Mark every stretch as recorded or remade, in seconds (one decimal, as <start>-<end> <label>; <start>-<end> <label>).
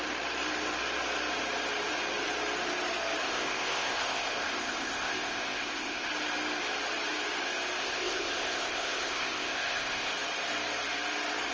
0.0-3.2 recorded; 3.2-6.1 remade; 6.1-7.8 recorded; 7.8-10.1 remade; 10.1-11.5 recorded